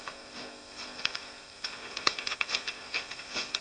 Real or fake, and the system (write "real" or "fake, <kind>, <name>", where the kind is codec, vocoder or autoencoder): fake, codec, DAC